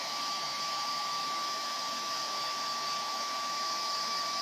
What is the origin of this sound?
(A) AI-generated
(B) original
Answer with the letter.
A